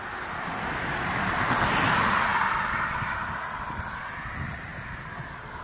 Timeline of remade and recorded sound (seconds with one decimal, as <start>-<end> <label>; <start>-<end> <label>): 0.0-5.6 recorded